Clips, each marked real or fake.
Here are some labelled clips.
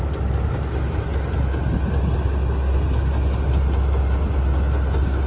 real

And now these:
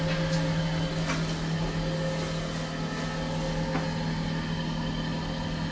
real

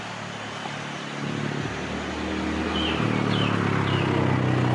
real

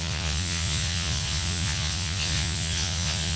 fake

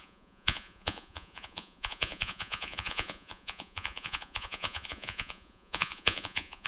fake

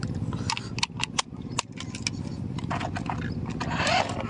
real